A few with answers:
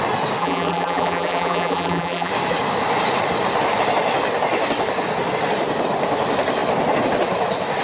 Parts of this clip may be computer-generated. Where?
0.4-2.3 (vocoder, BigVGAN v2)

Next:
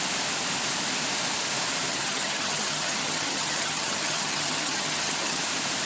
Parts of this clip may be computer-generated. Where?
1.9-5.4 (vocoder, HiFi-GAN)